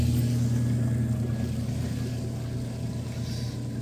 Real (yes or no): yes